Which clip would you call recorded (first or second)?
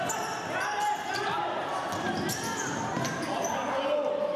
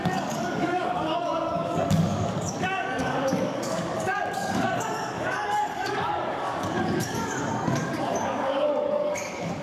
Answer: first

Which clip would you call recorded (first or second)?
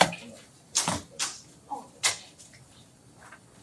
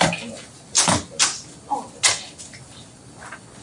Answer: second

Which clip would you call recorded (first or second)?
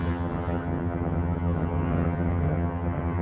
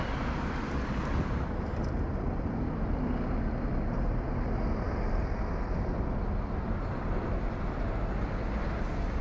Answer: second